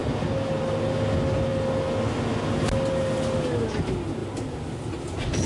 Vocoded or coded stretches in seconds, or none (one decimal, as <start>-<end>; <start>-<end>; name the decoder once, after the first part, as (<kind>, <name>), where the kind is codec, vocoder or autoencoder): none